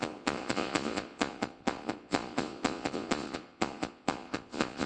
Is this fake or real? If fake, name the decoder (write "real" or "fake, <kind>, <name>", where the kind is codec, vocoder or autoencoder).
fake, vocoder, Vocos